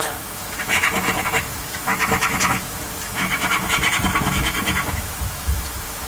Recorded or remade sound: remade